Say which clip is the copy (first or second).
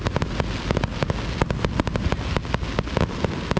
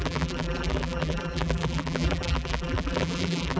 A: second